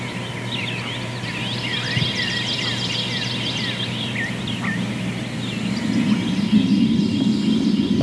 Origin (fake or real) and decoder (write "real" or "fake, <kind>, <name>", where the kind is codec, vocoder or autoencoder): real